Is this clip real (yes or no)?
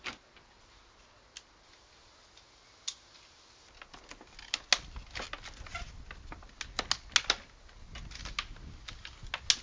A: yes